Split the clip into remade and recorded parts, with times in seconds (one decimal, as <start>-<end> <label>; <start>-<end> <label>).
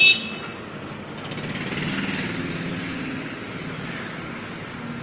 0.0-5.0 recorded